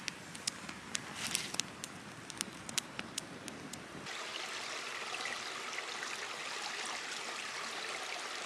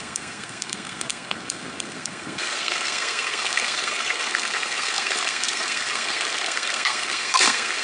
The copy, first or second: second